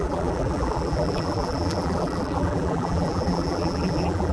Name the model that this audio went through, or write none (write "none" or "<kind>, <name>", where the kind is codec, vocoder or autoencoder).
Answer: vocoder, BigVGAN v2